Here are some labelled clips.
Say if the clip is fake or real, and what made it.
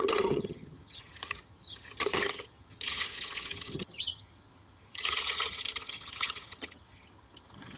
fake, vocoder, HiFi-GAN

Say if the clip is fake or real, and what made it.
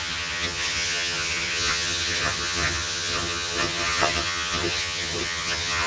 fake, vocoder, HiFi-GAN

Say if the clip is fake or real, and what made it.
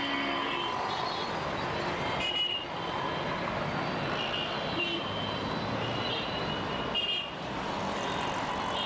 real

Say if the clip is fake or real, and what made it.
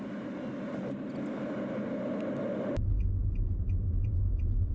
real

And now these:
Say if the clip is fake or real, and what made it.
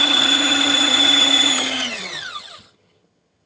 fake, vocoder, HiFi-GAN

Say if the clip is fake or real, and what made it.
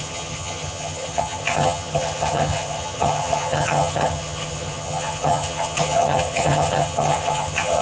fake, vocoder, HiFi-GAN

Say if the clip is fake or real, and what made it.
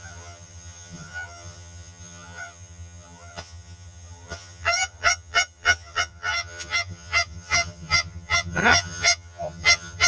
fake, vocoder, HiFi-GAN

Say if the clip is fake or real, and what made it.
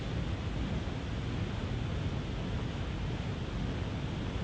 real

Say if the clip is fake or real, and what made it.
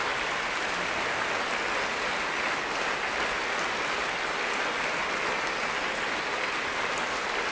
real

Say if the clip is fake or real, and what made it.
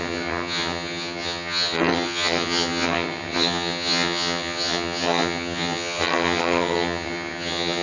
fake, vocoder, HiFi-GAN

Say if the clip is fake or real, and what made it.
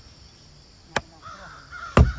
real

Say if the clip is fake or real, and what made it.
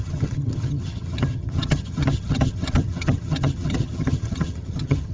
fake, vocoder, HiFi-GAN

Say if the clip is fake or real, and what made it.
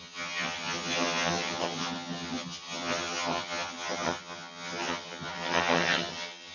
fake, vocoder, HiFi-GAN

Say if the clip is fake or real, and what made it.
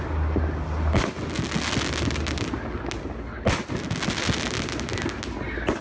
real